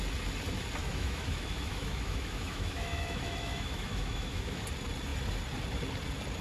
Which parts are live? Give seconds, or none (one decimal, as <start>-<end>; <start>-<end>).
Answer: 0.0-0.8; 4.6-6.4

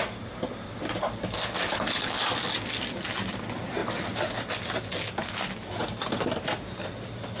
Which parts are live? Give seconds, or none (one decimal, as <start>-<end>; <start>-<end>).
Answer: 0.0-1.7; 2.2-7.4

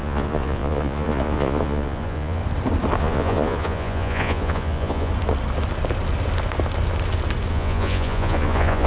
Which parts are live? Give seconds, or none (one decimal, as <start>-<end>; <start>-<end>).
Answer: 2.4-3.0; 5.1-7.5

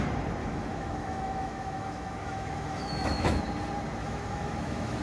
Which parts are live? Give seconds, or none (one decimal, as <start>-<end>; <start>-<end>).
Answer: 0.0-0.4; 3.4-4.0

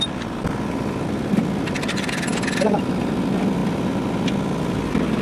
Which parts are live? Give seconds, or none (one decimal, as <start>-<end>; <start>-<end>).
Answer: 0.0-2.3; 3.2-5.2